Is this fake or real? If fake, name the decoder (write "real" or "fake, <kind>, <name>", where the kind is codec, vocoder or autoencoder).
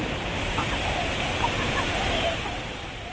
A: fake, vocoder, BigVGAN v2